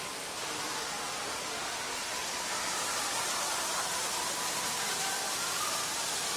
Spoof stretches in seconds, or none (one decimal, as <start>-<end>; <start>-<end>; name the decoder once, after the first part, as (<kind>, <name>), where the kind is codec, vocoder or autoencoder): 2.2-6.0 (vocoder, BigVGAN v2)